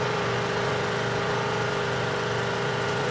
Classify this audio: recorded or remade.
remade